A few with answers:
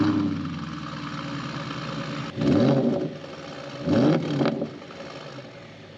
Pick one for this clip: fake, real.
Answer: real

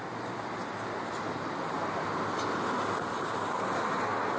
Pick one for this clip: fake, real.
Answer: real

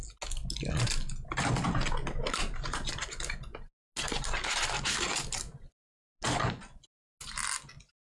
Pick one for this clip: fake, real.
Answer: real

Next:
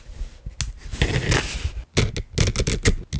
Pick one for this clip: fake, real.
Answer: real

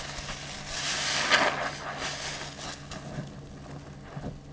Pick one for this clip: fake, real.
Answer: real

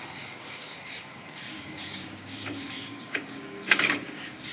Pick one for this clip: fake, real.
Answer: fake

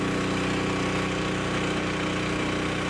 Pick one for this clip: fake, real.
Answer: real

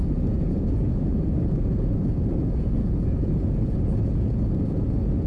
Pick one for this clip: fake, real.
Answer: fake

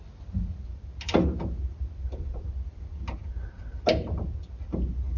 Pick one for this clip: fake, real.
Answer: real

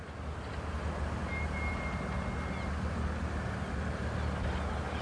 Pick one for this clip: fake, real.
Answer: real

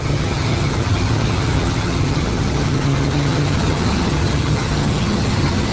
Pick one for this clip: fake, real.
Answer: fake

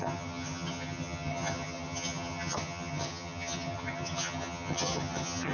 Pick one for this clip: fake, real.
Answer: fake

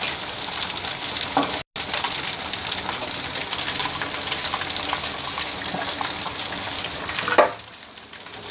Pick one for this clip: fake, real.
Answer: real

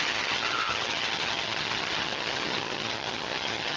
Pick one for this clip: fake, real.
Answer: fake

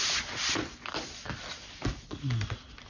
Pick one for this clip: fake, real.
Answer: real